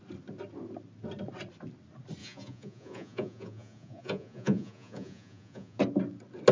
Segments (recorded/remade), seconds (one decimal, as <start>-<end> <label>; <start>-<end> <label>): 0.0-2.2 recorded; 2.2-5.8 remade; 5.8-6.5 recorded